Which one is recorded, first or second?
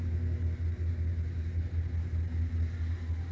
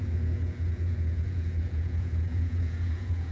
first